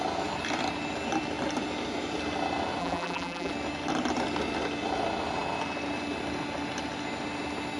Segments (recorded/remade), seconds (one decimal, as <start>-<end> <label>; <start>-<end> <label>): 0.0-2.8 recorded; 2.8-3.5 remade; 3.5-7.8 recorded